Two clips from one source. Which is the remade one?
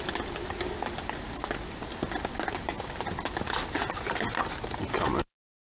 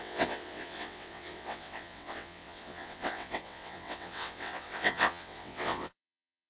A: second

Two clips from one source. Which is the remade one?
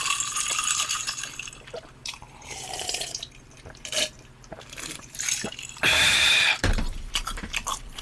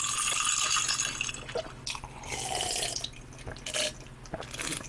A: first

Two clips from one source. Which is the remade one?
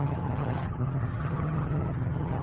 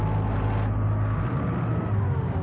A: first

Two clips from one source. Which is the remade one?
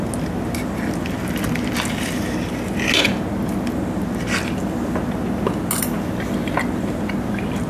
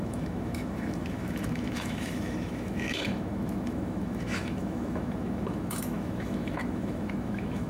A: second